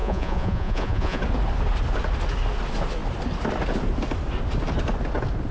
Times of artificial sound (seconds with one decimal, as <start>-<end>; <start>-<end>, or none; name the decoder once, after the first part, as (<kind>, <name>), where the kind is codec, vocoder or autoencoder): 0.0-1.2 (vocoder, Vocos)